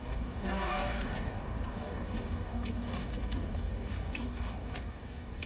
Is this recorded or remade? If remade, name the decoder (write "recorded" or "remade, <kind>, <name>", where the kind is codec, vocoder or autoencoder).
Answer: remade, codec, DAC